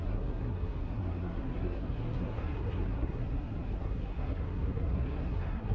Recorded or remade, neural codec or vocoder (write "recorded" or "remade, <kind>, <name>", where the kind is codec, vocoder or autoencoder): remade, codec, SNAC